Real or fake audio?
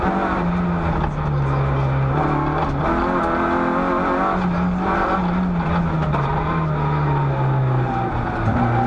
real